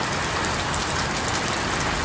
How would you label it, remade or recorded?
recorded